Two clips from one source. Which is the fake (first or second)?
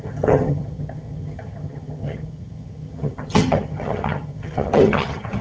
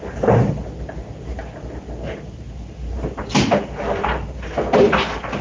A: first